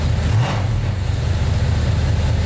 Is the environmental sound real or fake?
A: real